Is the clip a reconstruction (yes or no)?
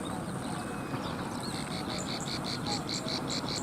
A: no